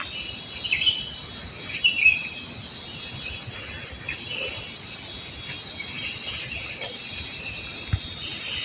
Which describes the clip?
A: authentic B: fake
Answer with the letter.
A